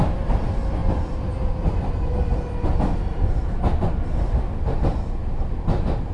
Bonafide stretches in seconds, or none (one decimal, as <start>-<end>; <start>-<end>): 0.0-6.1